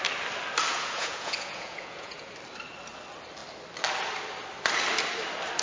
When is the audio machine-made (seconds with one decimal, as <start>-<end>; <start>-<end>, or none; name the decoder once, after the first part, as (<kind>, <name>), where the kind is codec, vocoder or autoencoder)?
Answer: 0.7-2.3 (vocoder, Vocos)